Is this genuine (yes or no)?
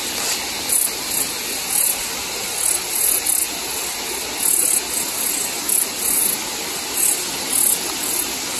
yes